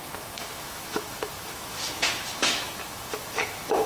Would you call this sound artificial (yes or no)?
yes